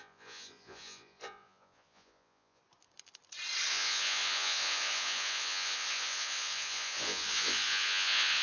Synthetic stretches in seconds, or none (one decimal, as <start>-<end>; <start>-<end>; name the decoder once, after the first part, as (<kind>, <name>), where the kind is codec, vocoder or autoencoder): 0.0-2.6 (vocoder, Vocos); 3.7-8.4